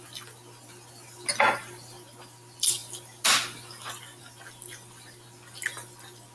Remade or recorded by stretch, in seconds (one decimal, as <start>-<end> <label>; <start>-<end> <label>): 0.0-6.3 recorded